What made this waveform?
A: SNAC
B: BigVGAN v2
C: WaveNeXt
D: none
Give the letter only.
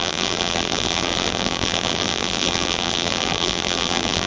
B